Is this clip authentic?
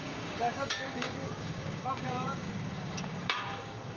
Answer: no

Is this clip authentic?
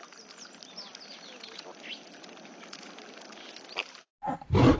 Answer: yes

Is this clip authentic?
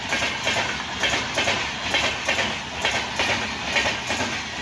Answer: yes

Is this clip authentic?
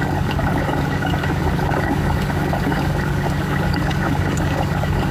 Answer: no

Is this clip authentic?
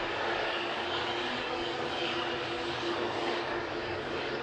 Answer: no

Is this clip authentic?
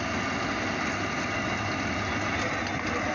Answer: yes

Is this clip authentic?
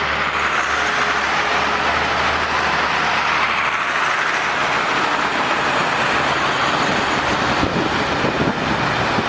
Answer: yes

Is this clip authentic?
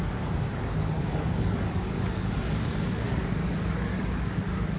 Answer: no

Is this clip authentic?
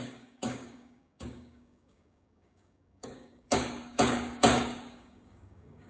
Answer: no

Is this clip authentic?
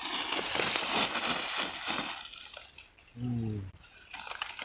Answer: yes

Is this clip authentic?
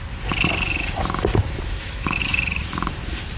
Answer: yes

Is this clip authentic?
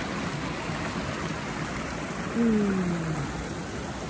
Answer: yes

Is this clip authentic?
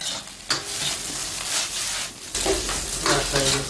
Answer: yes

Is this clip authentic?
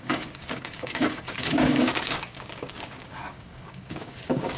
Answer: no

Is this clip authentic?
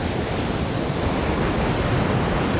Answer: yes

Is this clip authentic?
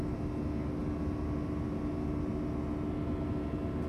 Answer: yes